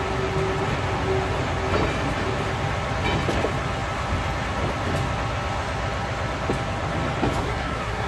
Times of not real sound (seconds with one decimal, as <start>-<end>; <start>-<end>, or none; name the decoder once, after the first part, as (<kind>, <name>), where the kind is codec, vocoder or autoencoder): 7.4-8.1 (codec, SNAC)